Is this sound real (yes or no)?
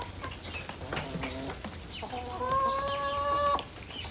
yes